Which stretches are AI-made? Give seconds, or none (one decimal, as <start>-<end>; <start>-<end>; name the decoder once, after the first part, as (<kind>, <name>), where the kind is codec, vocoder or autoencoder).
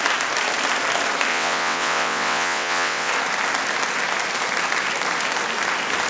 1.3-3.1 (vocoder, WaveNeXt)